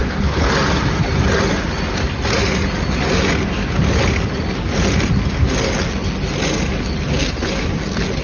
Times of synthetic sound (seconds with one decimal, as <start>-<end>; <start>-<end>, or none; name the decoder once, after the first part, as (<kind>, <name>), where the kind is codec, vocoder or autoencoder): 0.0-0.5 (codec, HILCodec)